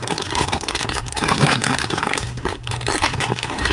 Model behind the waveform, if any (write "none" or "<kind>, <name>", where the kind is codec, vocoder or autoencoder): codec, SNAC